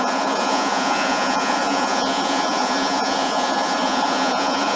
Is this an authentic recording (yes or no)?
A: no